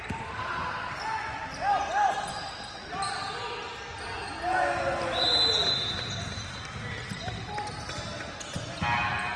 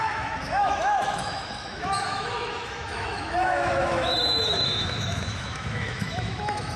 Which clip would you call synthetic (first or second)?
second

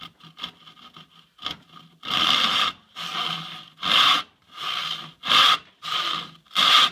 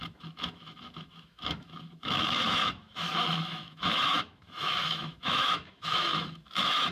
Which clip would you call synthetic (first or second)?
second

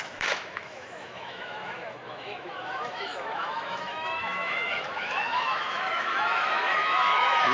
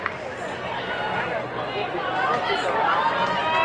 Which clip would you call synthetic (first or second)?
first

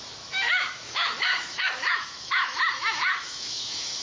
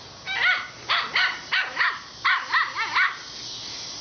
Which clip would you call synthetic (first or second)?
first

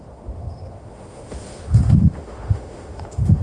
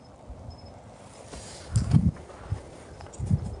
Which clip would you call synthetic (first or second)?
first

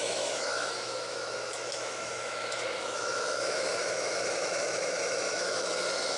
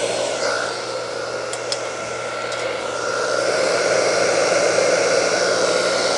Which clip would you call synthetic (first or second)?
first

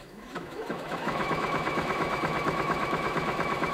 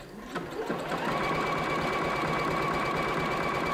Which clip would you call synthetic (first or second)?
first